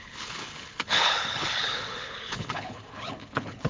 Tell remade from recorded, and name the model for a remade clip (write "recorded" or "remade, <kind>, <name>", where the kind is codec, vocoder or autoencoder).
remade, codec, HILCodec